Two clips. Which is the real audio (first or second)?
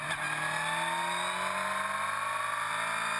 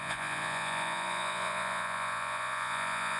first